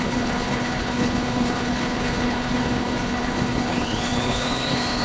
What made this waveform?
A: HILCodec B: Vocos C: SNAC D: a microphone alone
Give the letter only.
A